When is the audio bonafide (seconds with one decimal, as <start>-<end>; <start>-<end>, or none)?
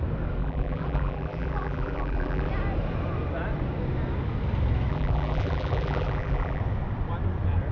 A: 0.0-0.4; 2.5-4.9; 6.6-7.7